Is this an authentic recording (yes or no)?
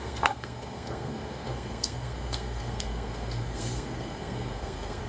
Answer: no